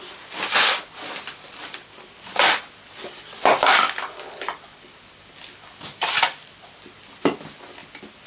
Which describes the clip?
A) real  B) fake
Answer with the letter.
A